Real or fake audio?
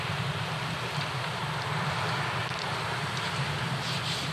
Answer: real